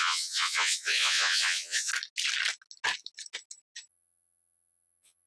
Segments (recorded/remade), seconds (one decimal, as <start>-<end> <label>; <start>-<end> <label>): 0.0-1.9 remade; 1.9-3.9 recorded; 3.9-5.3 remade